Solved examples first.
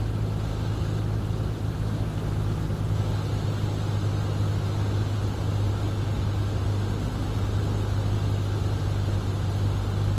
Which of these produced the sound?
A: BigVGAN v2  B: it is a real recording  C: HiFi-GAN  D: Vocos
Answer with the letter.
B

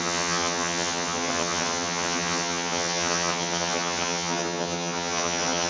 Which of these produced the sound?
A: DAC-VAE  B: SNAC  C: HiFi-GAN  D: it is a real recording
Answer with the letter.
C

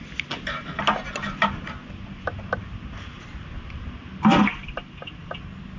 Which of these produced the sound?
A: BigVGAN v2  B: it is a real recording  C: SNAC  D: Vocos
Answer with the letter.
B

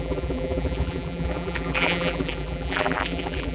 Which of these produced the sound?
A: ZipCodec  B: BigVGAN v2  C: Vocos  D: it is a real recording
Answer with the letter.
B